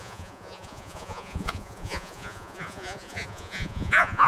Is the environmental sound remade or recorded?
remade